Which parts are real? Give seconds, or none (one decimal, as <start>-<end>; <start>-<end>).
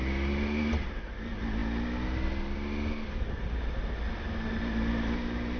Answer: 0.0-5.6